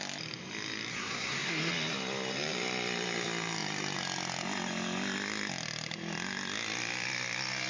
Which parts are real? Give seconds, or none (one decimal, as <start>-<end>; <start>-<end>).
0.0-0.9; 1.7-7.7